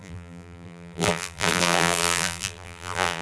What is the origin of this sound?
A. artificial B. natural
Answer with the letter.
A